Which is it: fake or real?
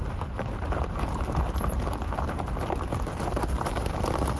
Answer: fake